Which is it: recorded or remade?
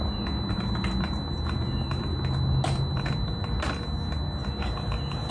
recorded